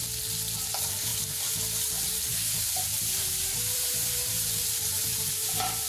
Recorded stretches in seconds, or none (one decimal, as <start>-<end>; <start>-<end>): 0.0-2.3